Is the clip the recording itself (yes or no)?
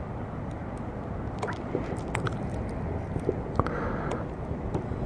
yes